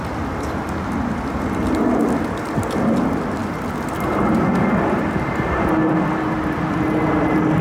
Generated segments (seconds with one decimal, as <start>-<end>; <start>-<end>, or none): none